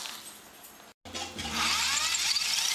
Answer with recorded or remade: recorded